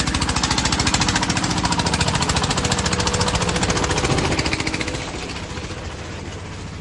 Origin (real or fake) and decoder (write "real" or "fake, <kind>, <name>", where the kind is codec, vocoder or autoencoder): real